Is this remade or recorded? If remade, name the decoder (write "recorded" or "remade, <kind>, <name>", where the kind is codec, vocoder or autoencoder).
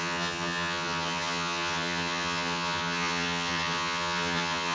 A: remade, vocoder, HiFi-GAN